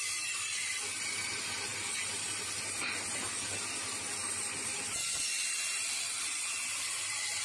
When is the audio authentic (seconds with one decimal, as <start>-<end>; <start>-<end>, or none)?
1.7-5.8